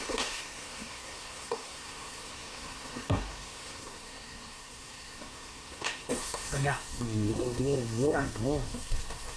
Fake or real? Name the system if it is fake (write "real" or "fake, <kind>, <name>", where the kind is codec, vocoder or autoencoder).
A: fake, codec, SNAC